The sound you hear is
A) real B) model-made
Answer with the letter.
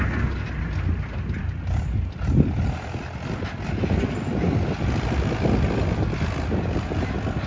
A